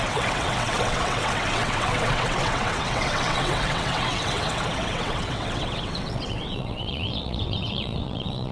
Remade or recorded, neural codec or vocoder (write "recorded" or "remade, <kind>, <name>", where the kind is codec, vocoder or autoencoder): remade, vocoder, WaveNeXt